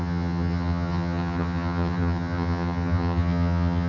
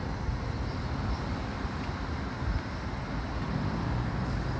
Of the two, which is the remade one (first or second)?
first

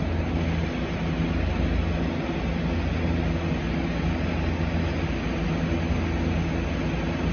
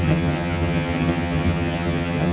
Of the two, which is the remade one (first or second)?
second